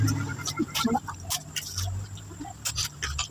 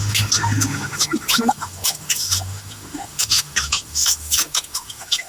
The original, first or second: first